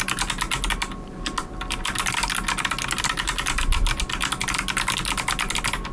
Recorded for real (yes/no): yes